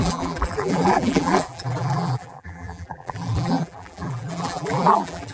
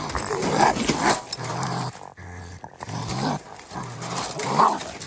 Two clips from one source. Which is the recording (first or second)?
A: second